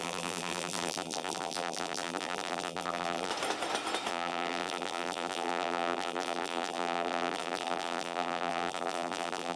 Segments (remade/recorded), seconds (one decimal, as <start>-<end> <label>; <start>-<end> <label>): 0.0-3.3 remade; 3.3-4.1 recorded; 4.1-9.6 remade